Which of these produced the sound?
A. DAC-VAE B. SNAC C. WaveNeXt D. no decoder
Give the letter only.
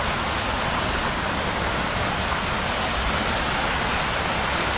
D